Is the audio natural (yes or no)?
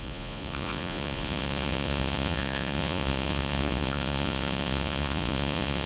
no